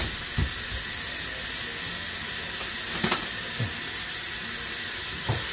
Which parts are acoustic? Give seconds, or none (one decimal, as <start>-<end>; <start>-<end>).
0.0-5.5